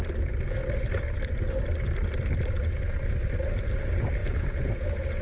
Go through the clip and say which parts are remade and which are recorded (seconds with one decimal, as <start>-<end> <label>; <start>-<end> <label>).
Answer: 0.0-4.2 recorded; 4.2-5.2 remade